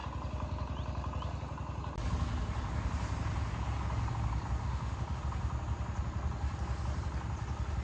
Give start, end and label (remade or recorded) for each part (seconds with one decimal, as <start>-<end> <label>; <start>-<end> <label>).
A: 0.0-4.6 recorded; 4.6-5.2 remade; 5.2-7.8 recorded